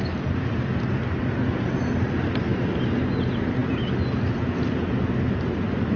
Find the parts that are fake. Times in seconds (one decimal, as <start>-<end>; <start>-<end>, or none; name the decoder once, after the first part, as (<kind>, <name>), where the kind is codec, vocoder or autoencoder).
none